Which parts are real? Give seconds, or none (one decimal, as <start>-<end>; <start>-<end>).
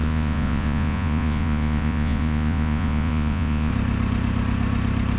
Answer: 3.7-5.2